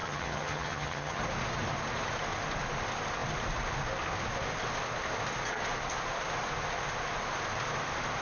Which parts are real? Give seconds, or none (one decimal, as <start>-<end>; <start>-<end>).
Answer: 1.2-8.2